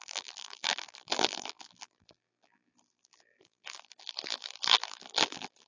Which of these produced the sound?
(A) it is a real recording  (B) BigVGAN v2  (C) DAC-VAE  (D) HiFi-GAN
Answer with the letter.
B